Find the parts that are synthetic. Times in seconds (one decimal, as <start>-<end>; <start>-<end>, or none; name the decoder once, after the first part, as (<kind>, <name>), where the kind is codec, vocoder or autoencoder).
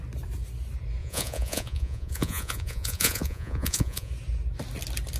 1.0-4.1 (vocoder, Vocos)